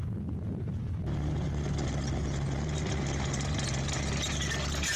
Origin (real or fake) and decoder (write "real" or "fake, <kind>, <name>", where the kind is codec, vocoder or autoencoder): real